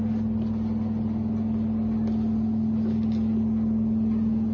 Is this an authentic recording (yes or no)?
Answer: yes